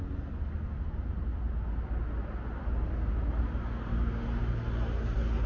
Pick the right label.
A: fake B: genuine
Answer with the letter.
B